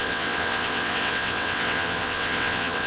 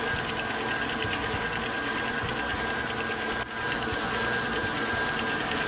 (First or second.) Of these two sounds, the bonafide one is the second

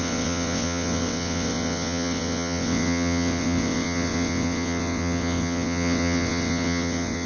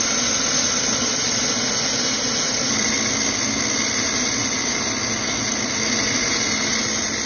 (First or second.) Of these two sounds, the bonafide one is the second